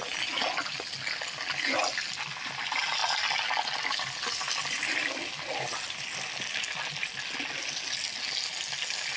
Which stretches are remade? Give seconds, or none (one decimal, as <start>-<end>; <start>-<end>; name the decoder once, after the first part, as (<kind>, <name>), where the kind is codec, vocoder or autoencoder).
none